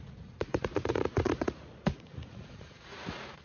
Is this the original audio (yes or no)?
no